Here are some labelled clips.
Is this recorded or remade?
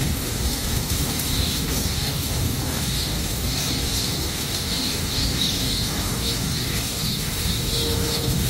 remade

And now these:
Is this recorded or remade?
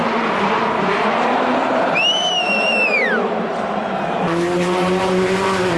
remade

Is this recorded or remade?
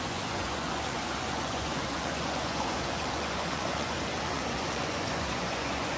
remade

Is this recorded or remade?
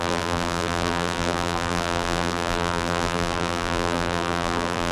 remade